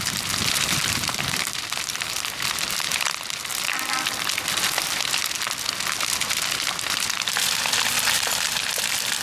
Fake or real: fake